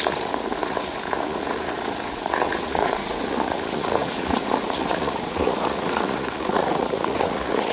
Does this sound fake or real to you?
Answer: fake